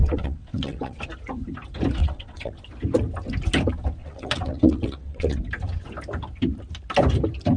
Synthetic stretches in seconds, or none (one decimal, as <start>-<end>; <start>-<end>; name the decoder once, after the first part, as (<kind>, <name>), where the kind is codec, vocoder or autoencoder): 0.0-1.0 (vocoder, WaveNeXt); 2.0-2.5; 4.0-5.4